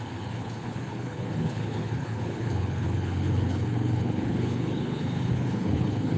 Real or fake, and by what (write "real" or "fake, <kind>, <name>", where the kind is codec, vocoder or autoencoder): fake, codec, HILCodec